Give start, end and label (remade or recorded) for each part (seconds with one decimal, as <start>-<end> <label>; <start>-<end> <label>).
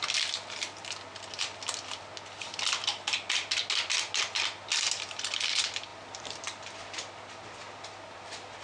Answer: 0.0-8.6 recorded